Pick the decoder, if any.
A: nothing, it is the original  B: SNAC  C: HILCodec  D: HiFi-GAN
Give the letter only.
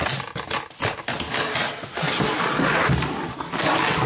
A